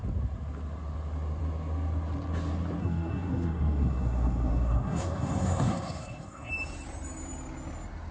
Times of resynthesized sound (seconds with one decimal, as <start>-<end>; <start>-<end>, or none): 2.8-6.5